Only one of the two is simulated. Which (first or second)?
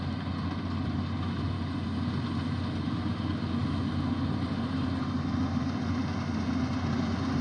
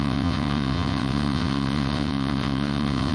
second